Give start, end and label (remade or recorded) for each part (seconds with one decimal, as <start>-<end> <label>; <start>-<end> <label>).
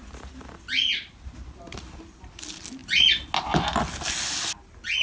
0.0-5.0 recorded